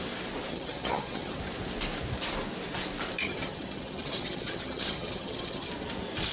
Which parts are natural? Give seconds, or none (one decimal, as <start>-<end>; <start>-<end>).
0.0-0.5; 1.4-3.2; 5.7-6.3